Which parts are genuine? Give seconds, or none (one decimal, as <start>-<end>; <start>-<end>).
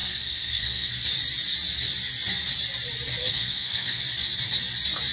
0.9-3.2; 4.0-5.1